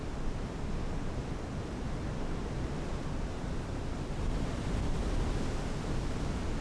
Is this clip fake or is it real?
real